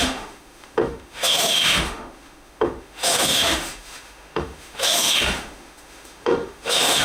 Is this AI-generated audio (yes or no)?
yes